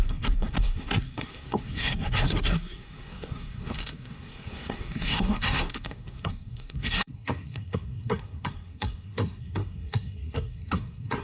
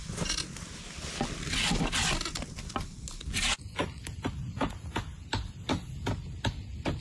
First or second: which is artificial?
first